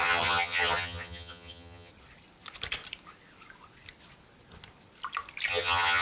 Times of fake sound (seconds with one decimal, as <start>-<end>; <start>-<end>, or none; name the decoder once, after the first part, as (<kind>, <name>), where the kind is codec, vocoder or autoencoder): 0.0-1.9 (vocoder, HiFi-GAN); 5.5-6.0